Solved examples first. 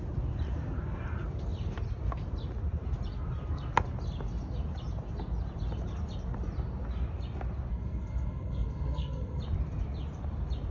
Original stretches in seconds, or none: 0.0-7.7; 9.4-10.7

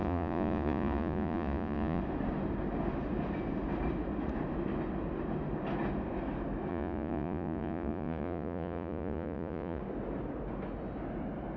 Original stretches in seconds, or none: 2.0-6.7; 9.8-11.6

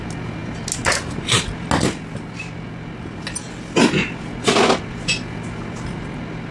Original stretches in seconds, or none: 0.0-6.5

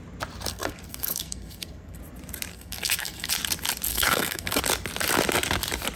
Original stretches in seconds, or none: 0.0-0.5; 2.0-2.5; 3.3-3.9; 4.6-6.0

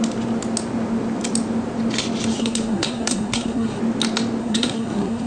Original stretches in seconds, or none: 0.0-2.3; 3.8-4.4

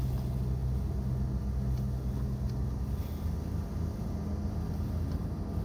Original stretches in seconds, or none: 0.0-5.6

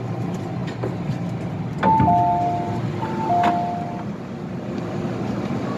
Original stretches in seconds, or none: 0.0-5.8